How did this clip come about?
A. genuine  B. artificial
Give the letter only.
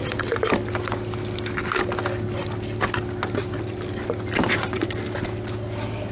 A